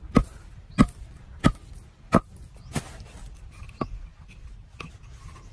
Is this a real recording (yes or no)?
yes